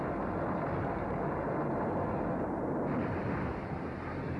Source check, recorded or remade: recorded